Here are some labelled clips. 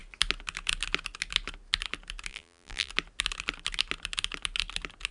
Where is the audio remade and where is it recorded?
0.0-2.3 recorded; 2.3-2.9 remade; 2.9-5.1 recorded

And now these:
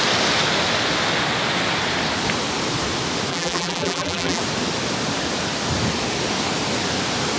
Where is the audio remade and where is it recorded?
0.0-3.3 recorded; 3.3-4.4 remade; 4.4-7.4 recorded

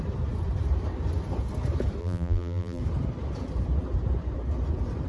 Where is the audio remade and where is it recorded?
0.0-2.0 recorded; 2.0-2.8 remade; 2.8-5.1 recorded

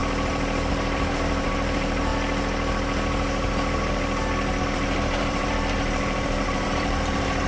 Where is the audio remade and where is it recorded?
0.0-0.7 recorded; 0.7-2.1 remade; 2.1-4.6 recorded; 4.6-7.5 remade